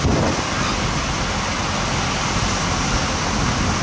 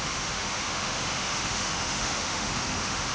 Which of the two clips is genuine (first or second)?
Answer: first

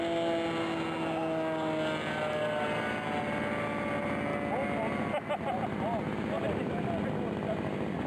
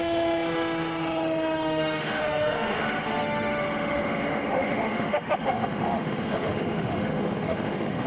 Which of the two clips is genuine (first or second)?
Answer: first